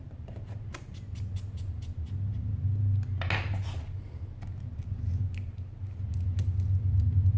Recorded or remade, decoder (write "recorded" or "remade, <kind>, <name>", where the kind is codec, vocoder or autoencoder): recorded